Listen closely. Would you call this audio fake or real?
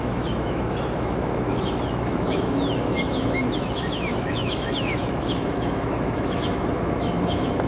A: fake